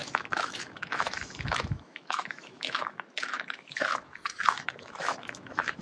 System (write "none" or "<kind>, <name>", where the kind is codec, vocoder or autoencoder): autoencoder, DAC-VAE